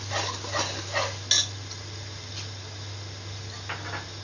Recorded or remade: recorded